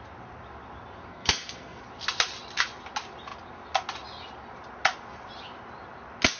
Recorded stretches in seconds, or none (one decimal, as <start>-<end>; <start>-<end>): 0.0-1.1; 1.8-6.4